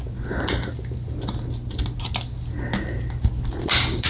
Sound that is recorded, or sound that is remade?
recorded